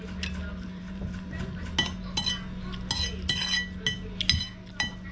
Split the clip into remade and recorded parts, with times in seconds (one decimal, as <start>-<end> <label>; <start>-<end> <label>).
0.0-0.5 recorded; 0.5-1.7 remade; 1.7-5.1 recorded